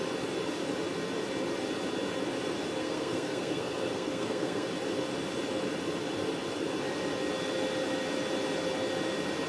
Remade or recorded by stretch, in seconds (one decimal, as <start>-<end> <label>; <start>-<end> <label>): 0.0-2.8 recorded; 2.8-4.7 remade; 4.7-9.5 recorded